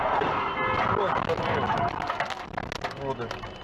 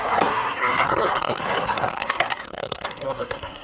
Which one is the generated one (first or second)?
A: second